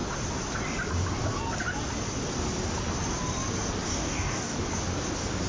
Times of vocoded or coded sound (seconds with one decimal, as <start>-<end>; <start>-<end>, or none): 3.9-4.6